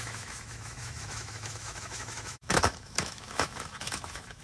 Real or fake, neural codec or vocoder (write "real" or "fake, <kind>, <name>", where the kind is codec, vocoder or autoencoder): fake, autoencoder, DAC-VAE